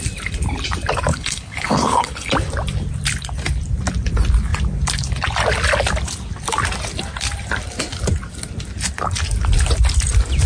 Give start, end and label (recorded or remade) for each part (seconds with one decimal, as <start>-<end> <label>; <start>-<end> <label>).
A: 0.0-1.1 recorded; 1.1-2.3 remade; 2.3-10.5 recorded